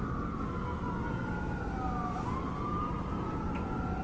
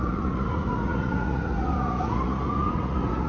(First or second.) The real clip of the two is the first